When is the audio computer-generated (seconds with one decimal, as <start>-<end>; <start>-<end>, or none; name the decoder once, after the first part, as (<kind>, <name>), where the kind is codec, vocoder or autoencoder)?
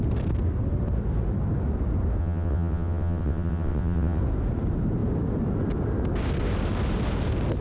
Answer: 2.2-4.2 (vocoder, WaveNeXt)